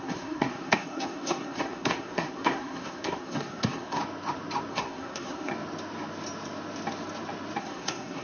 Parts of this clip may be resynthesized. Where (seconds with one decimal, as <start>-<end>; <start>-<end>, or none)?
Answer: 0.0-4.0; 4.7-5.5; 7.6-8.2